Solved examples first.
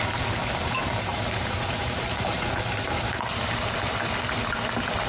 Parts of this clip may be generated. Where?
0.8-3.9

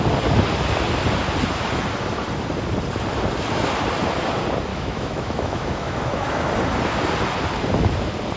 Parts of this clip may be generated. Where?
4.7-6.5

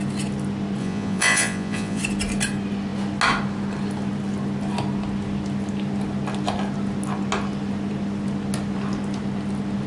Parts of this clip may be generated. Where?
0.8-2.0

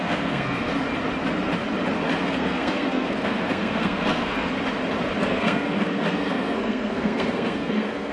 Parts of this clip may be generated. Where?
0.0-0.7; 2.2-4.5; 5.2-8.1